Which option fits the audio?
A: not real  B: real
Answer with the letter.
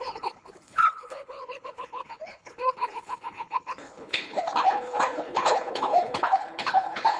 A